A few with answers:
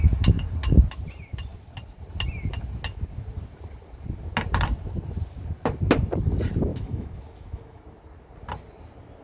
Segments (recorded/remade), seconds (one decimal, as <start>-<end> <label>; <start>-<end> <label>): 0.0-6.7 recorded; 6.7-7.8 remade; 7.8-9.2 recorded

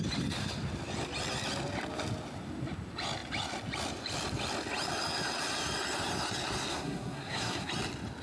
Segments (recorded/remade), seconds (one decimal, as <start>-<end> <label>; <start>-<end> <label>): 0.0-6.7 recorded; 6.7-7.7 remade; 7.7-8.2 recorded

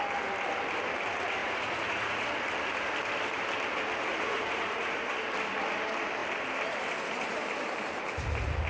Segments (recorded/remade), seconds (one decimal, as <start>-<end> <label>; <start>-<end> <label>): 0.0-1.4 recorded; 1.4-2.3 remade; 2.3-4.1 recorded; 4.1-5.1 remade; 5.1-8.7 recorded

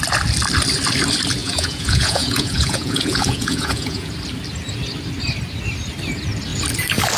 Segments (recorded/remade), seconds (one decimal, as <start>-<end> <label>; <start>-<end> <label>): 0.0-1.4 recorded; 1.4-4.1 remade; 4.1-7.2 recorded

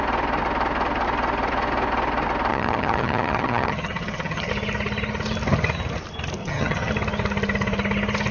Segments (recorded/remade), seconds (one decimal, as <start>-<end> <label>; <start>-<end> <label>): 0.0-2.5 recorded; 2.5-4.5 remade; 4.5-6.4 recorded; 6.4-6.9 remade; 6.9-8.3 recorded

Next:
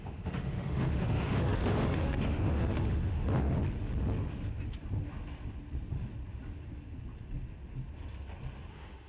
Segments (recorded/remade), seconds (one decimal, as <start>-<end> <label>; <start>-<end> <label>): 0.0-3.6 remade; 3.6-8.7 recorded; 8.7-9.1 remade

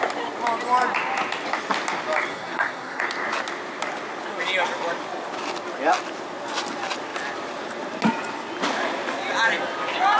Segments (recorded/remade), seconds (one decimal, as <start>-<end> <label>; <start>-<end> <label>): 0.0-2.3 recorded; 2.3-3.0 remade; 3.0-10.2 recorded